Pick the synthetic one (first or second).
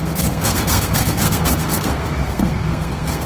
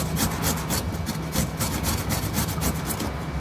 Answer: first